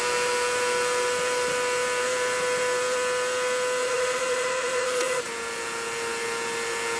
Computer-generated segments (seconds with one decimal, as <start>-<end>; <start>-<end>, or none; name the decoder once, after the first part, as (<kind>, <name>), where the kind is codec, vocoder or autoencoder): 3.8-5.2 (vocoder, Vocos)